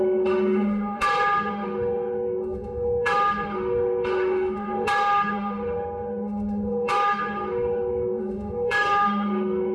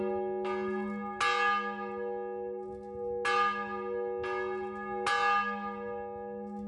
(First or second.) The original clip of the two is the second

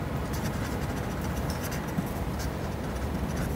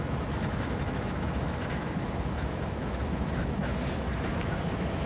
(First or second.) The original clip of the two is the first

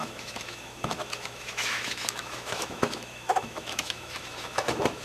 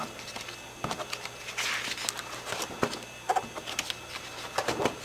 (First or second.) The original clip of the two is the second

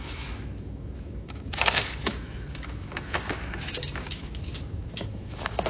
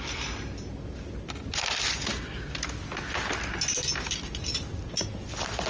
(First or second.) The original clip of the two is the second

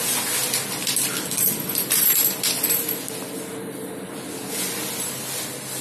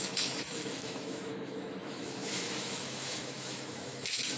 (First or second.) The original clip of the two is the first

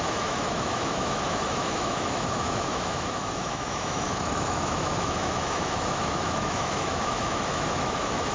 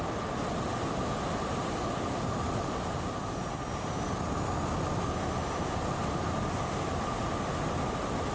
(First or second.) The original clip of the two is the second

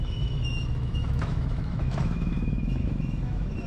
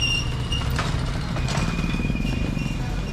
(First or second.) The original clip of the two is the second